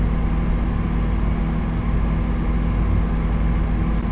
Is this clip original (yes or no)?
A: yes